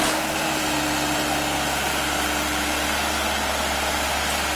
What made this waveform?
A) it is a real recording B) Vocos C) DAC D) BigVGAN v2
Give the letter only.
A